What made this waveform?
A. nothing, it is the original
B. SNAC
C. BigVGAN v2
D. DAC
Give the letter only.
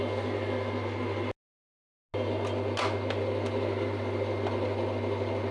A